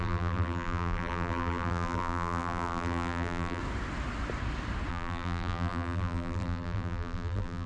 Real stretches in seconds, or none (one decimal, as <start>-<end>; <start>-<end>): 3.6-4.9